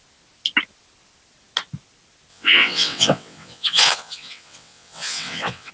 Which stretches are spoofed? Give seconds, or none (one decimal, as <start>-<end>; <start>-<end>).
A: 2.3-5.7